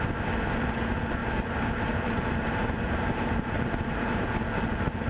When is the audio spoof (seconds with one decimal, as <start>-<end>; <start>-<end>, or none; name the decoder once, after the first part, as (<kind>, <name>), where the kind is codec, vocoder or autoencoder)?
1.2-4.3 (vocoder, BigVGAN v2)

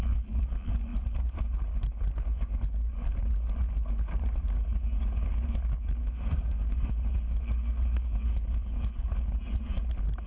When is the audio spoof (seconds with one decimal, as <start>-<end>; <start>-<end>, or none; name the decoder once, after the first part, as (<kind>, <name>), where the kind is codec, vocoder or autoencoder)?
6.0-6.9 (codec, SNAC)

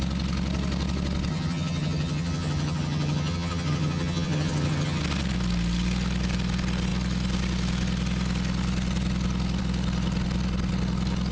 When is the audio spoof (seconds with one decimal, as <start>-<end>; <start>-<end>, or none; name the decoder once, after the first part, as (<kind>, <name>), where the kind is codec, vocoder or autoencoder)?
1.3-5.0 (vocoder, HiFi-GAN)

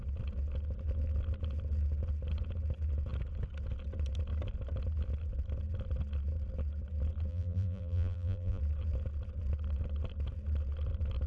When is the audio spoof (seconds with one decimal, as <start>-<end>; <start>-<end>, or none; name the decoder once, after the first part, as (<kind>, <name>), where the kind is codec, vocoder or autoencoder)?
7.3-8.6 (vocoder, BigVGAN v2)

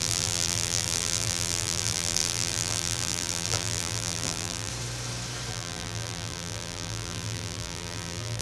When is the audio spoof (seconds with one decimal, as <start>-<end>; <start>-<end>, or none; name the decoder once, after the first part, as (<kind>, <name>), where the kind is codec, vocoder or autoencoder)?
0.0-4.7 (vocoder, BigVGAN v2); 5.5-8.4